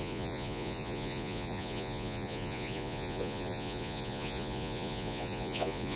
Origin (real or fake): fake